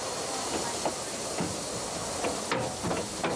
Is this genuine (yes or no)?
yes